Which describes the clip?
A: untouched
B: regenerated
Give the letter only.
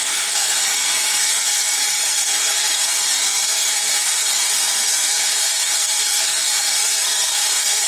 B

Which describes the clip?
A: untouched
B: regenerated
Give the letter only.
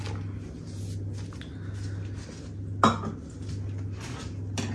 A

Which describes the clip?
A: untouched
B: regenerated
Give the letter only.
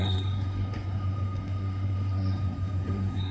B